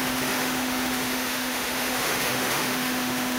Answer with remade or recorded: remade